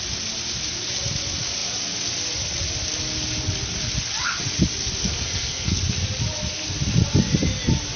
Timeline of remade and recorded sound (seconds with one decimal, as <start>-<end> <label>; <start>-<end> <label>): 0.0-5.0 recorded; 5.0-5.8 remade; 5.8-8.0 recorded

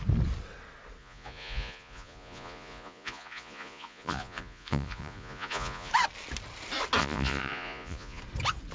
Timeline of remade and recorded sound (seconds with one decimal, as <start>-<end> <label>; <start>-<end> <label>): 0.0-1.0 recorded; 1.0-5.9 remade; 5.9-7.0 recorded; 7.0-8.2 remade; 8.2-8.7 recorded

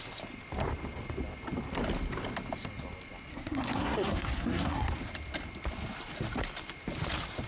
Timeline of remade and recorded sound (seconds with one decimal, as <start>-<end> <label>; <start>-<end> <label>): 0.0-3.3 recorded; 3.3-4.9 remade; 4.9-7.5 recorded

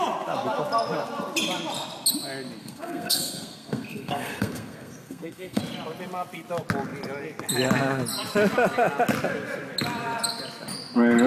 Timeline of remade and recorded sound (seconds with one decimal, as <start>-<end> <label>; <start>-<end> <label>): 0.0-2.6 recorded; 2.6-5.6 remade; 5.6-11.3 recorded

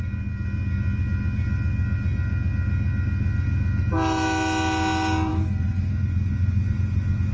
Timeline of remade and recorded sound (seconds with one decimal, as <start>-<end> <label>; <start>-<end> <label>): 0.0-5.3 recorded; 5.3-5.9 remade; 5.9-7.3 recorded

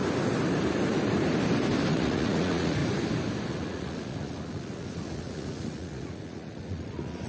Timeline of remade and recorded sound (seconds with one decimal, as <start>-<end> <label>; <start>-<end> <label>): 0.0-1.9 recorded; 1.9-2.8 remade; 2.8-3.5 recorded; 3.5-7.3 remade

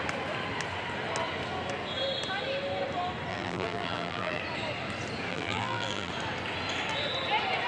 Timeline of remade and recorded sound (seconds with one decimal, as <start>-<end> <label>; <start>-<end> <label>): 0.0-3.3 recorded; 3.3-4.4 remade; 4.4-5.3 recorded; 5.3-6.1 remade; 6.1-7.7 recorded